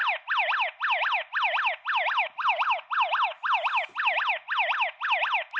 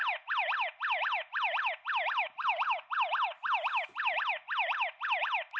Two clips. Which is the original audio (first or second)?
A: first